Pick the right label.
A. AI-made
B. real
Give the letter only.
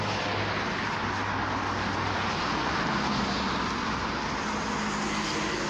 B